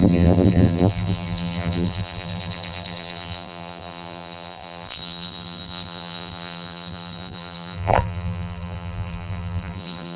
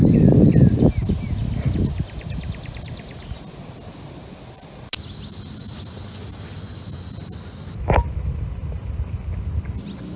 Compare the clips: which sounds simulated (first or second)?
first